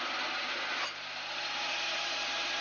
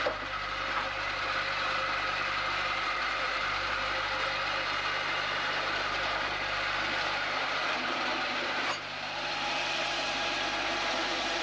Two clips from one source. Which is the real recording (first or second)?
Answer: first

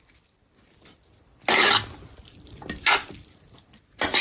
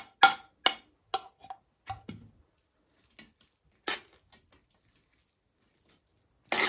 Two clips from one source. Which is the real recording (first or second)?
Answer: second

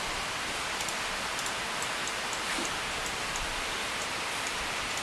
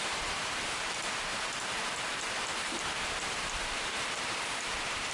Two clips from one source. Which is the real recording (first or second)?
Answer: first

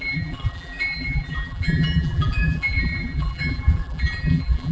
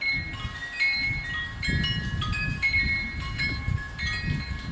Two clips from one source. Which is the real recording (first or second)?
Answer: second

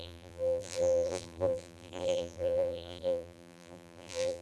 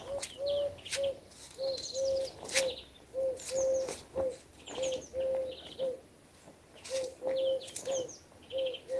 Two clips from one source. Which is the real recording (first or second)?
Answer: second